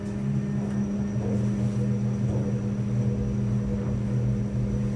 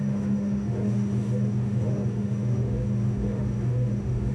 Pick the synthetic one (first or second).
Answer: second